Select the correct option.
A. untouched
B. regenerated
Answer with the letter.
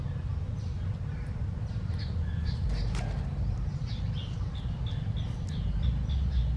A